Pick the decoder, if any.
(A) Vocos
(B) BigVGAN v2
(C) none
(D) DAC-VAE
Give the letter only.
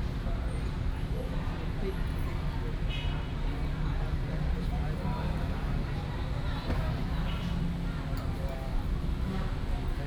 C